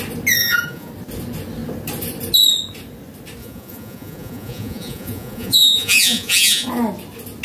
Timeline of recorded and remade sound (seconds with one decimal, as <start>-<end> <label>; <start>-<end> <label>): 0.0-0.4 recorded; 0.4-0.9 remade; 0.9-3.4 recorded; 3.4-6.7 remade; 6.7-7.4 recorded